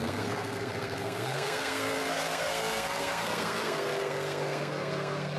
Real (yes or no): no